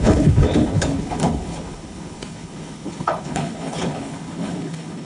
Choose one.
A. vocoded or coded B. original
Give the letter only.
A